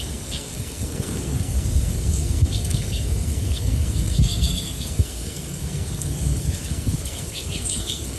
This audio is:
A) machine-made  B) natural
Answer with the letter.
A